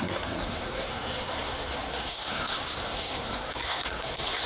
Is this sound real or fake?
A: fake